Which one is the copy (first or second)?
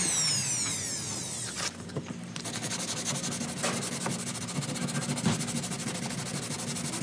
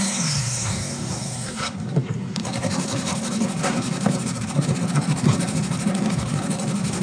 second